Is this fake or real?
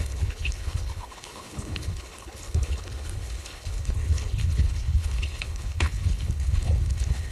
fake